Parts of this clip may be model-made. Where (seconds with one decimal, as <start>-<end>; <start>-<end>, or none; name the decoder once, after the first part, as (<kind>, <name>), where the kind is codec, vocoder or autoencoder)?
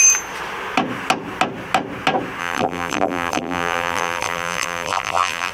2.4-5.5 (vocoder, BigVGAN v2)